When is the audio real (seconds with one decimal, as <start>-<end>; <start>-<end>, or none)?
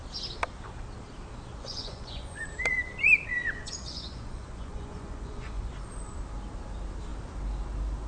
0.0-1.5; 2.4-3.6; 5.7-8.1